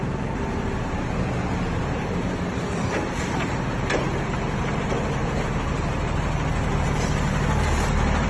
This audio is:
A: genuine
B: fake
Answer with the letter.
B